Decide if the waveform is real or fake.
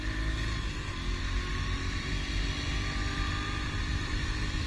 real